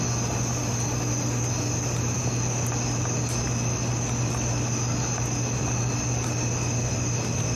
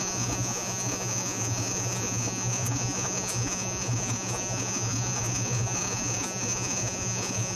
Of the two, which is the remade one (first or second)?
second